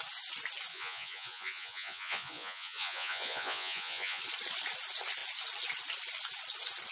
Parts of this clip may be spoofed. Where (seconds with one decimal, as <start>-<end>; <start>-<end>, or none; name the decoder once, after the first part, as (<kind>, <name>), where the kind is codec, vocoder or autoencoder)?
0.7-4.2 (vocoder, Vocos)